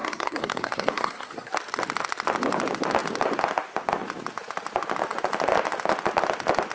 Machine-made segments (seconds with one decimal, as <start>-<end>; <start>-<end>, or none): 0.0-1.5